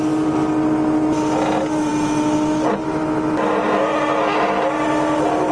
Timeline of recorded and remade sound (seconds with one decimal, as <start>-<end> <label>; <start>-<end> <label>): 0.0-5.5 recorded